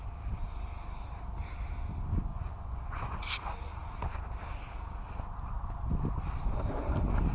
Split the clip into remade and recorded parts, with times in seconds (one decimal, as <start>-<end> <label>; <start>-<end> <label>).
0.0-2.3 recorded; 2.3-3.3 remade; 3.3-7.3 recorded